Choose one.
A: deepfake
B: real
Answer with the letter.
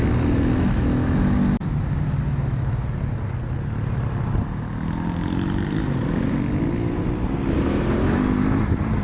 B